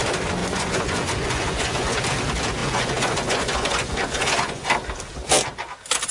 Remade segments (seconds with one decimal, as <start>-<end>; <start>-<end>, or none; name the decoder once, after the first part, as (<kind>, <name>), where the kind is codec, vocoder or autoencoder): 0.4-2.0 (vocoder, Vocos); 2.6-4.7